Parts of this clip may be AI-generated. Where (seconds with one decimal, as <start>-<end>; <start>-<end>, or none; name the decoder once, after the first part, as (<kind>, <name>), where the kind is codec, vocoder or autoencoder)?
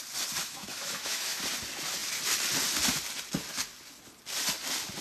0.4-1.4 (autoencoder, DAC-VAE)